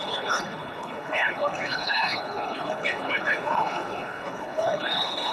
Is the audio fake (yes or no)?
yes